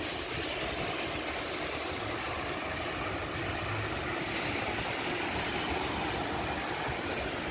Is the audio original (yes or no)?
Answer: yes